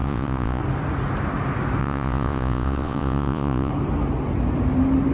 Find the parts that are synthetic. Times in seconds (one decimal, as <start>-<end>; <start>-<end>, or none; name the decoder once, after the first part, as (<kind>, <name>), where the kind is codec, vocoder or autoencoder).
0.0-0.6 (vocoder, Vocos); 1.8-3.7